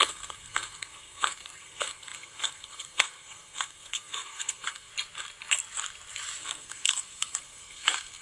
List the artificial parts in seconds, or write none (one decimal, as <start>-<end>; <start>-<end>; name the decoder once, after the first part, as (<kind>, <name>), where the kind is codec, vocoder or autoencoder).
0.0-4.9 (codec, SNAC); 6.4-8.2